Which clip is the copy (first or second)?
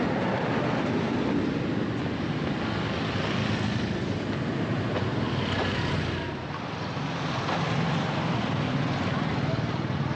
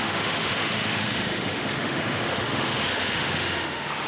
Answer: second